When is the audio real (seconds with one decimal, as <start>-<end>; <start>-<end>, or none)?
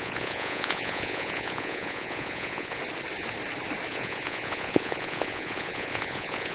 2.8-3.9